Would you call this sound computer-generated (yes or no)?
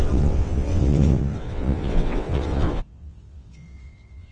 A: yes